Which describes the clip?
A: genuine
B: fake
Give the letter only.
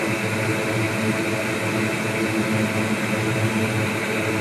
A